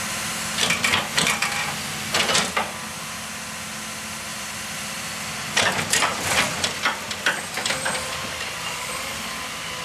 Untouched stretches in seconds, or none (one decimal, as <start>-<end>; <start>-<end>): 0.0-1.4; 2.1-4.3; 8.9-9.8